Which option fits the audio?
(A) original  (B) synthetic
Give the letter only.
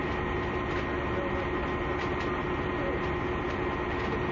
A